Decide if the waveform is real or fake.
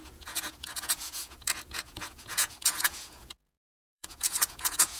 fake